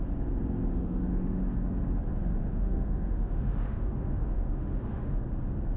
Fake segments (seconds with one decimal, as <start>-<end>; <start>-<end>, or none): 0.7-1.4; 2.4-5.1